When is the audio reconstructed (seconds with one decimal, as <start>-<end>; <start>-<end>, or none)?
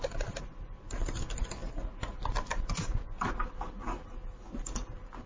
none